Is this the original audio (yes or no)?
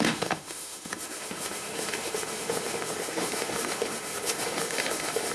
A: no